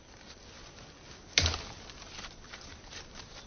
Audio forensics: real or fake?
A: real